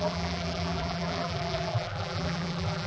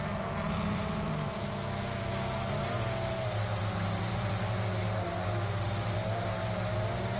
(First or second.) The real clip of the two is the second